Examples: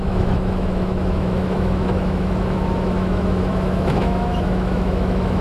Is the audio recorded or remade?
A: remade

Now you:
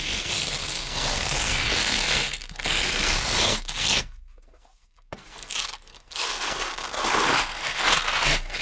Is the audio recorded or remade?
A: remade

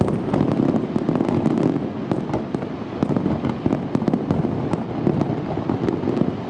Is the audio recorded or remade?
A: recorded